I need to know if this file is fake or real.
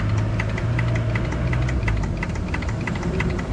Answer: real